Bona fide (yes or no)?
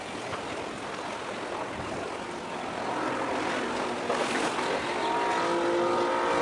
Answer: yes